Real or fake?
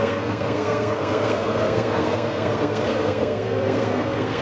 fake